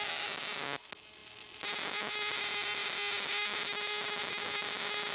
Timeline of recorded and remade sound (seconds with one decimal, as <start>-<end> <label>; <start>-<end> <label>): 0.0-5.1 recorded